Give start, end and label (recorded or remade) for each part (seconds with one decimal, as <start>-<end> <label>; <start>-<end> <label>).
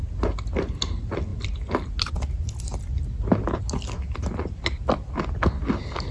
0.0-6.1 recorded